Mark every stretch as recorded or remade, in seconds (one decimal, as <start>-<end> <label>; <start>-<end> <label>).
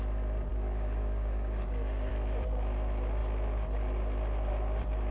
0.0-0.5 recorded; 0.5-2.1 remade; 2.1-5.1 recorded